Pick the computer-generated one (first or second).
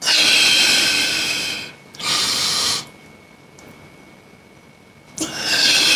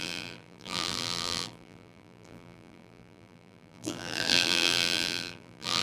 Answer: second